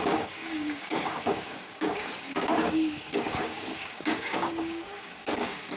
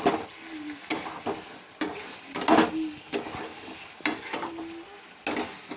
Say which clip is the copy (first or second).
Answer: first